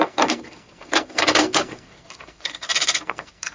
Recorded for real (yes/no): no